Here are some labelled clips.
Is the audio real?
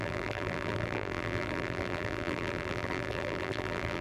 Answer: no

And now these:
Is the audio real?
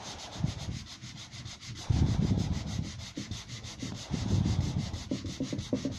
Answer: no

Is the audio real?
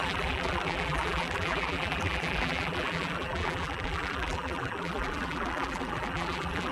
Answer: no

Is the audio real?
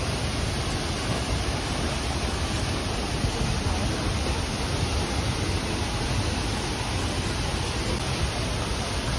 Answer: yes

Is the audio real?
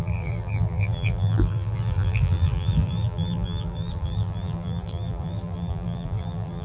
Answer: no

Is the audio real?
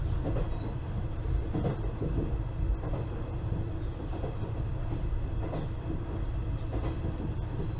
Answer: no